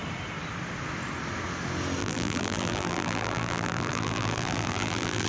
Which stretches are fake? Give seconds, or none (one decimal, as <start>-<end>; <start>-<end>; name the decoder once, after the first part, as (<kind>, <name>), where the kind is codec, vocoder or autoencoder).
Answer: 2.0-5.3 (vocoder, BigVGAN v2)